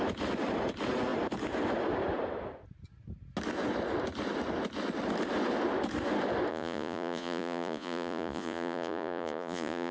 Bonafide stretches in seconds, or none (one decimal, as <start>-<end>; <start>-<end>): 0.0-6.5